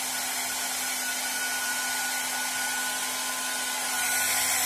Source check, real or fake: real